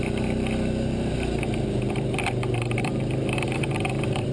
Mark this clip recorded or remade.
remade